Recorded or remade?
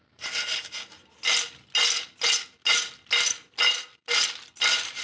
recorded